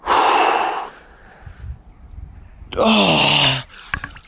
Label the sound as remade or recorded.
recorded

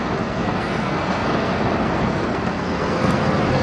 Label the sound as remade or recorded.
remade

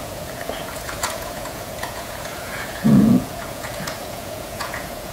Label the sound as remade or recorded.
remade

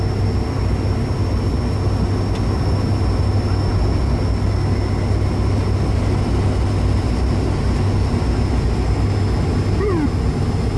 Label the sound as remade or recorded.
recorded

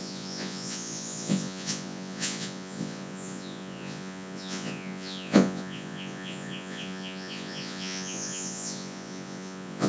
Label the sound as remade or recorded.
remade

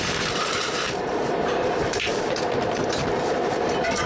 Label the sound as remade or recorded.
remade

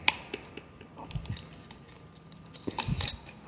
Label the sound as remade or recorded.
recorded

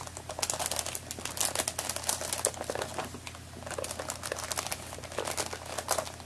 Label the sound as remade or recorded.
recorded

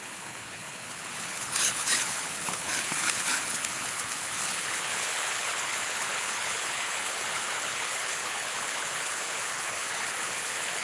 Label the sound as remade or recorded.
remade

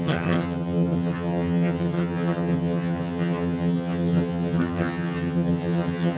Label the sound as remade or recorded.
remade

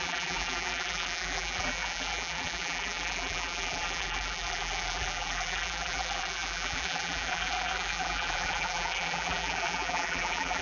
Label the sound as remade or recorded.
remade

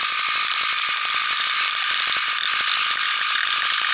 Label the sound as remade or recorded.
recorded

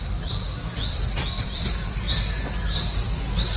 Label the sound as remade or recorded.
remade